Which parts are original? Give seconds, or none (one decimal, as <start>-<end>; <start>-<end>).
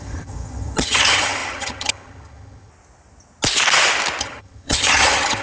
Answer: 2.7-4.2